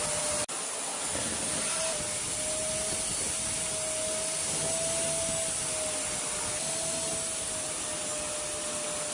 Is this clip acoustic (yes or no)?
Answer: yes